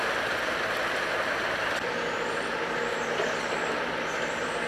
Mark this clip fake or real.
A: fake